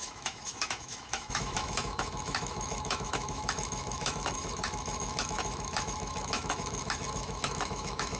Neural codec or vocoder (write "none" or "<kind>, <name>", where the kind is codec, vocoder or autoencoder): autoencoder, DAC-VAE